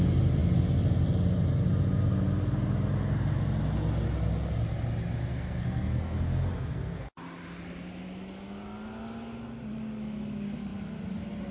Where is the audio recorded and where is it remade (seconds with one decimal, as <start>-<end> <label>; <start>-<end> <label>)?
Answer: 0.0-5.3 recorded; 5.3-7.1 remade; 7.1-11.5 recorded